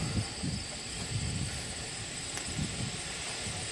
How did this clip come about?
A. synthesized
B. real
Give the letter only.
B